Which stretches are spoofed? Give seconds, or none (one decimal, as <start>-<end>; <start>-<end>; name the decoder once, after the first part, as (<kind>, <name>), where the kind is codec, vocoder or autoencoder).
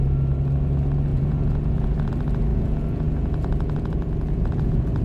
1.1-2.1 (vocoder, Vocos); 2.5-5.0